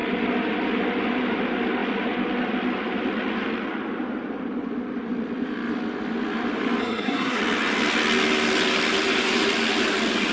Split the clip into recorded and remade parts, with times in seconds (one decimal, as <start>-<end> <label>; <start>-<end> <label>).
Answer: 0.0-6.8 recorded; 6.8-7.4 remade; 7.4-10.3 recorded